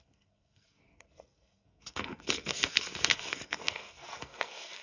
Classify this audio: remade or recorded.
remade